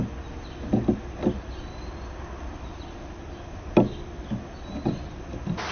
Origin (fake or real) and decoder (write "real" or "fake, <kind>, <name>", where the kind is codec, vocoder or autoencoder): real